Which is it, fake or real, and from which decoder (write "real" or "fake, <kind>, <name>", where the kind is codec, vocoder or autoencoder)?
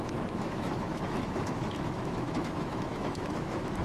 fake, autoencoder, DAC-VAE